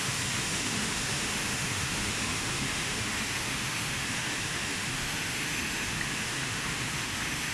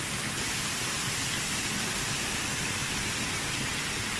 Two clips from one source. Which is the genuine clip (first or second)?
second